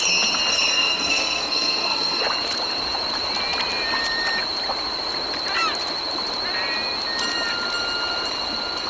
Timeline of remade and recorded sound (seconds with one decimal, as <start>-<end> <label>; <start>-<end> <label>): 0.0-0.5 recorded; 0.5-2.2 remade; 2.2-8.9 recorded